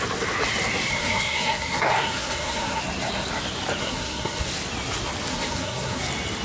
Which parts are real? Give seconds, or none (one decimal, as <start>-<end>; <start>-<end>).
0.0-0.9; 2.8-3.8; 4.5-5.3; 6.0-6.4